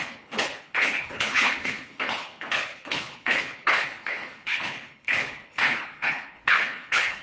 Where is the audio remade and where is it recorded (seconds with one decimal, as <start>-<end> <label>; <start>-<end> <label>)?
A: 0.0-7.2 remade